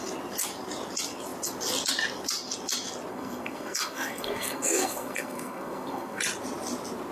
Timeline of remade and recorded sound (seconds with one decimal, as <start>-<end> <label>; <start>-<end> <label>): 0.0-3.1 recorded; 3.1-6.2 remade; 6.2-7.1 recorded